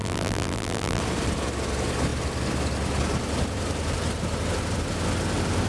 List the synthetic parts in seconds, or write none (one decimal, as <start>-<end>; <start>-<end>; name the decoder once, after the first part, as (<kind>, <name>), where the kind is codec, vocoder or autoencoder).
0.0-1.0 (vocoder, BigVGAN v2)